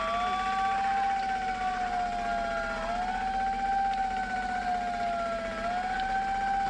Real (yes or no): yes